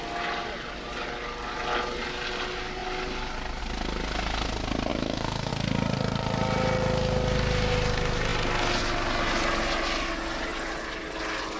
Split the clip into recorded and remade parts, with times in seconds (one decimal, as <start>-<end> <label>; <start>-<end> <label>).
0.0-4.9 recorded; 4.9-5.5 remade; 5.5-11.6 recorded